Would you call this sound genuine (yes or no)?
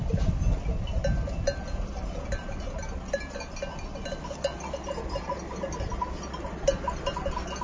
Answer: yes